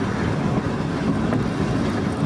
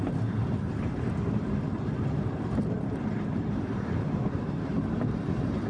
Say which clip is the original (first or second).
first